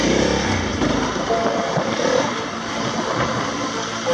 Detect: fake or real real